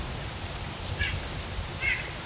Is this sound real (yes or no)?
yes